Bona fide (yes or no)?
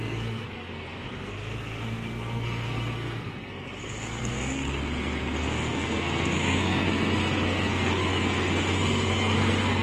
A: no